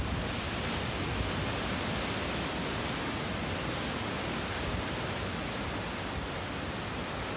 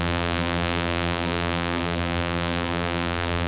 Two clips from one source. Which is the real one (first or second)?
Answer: first